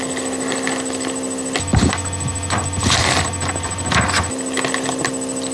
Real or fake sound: real